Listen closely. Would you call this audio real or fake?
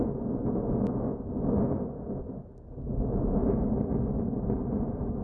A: real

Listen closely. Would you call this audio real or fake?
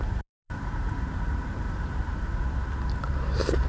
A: fake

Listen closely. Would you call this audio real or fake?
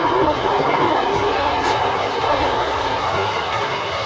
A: fake